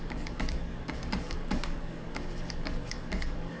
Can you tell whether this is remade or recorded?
remade